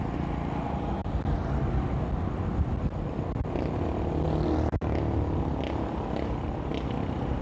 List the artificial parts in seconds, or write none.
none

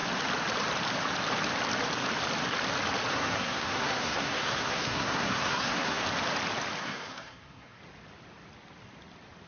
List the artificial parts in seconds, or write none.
3.1-6.0; 6.8-7.8

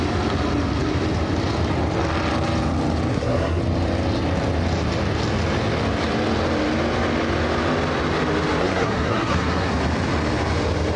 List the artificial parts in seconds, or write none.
3.1-3.6; 8.6-9.7

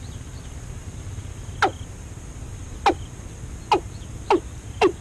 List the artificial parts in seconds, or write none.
none

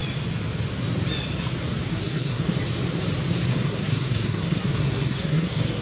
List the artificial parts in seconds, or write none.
1.9-2.5; 3.5-5.8

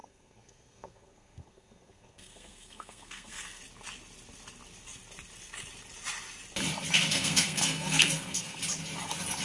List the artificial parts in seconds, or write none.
0.0-3.6; 7.1-8.6